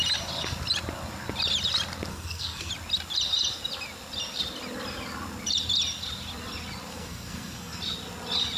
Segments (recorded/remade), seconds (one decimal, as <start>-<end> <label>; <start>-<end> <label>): 0.0-2.1 recorded; 2.1-2.7 remade; 2.7-6.9 recorded; 6.9-7.8 remade; 7.8-8.6 recorded